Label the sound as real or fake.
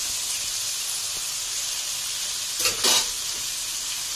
real